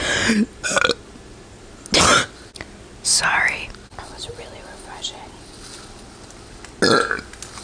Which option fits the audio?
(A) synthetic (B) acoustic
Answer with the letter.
B